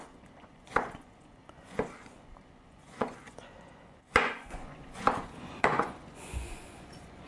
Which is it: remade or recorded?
remade